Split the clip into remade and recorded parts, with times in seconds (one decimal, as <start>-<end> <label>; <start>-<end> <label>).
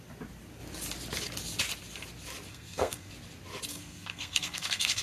0.0-2.5 recorded; 2.5-3.1 remade; 3.1-3.7 recorded; 3.7-5.0 remade